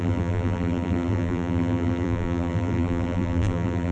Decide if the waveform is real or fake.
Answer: fake